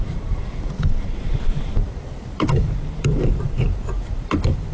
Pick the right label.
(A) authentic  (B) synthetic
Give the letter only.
B